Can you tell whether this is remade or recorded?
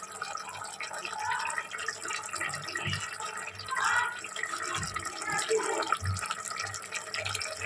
recorded